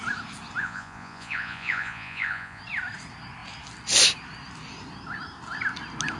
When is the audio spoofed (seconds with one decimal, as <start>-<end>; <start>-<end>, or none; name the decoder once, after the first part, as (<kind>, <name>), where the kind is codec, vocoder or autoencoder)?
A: 0.6-2.6 (vocoder, Vocos)